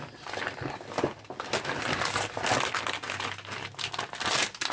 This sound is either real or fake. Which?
real